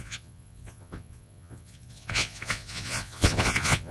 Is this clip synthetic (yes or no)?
yes